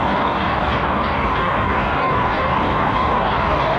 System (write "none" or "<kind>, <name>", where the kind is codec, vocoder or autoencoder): codec, DAC